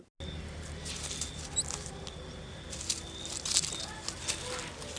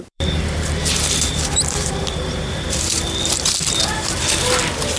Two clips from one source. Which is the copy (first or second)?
second